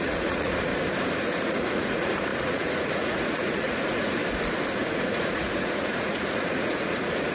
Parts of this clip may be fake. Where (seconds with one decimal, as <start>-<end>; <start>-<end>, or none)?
0.0-0.7; 1.2-4.2; 4.9-7.3